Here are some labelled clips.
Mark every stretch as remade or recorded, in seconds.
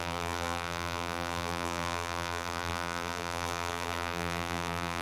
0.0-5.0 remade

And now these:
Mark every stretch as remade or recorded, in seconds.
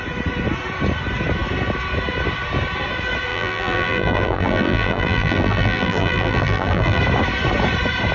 0.0-3.3 recorded; 3.3-7.0 remade; 7.0-8.1 recorded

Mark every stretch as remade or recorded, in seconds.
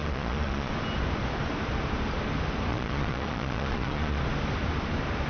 0.0-0.7 remade; 0.7-2.7 recorded; 2.7-4.2 remade; 4.2-5.3 recorded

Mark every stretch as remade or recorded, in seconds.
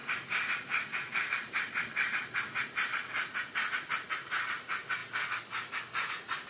0.0-3.9 remade; 3.9-6.5 recorded